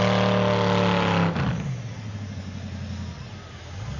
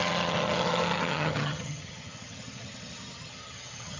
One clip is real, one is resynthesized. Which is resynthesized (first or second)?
second